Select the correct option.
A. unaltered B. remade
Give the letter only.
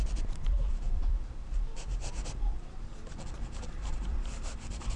B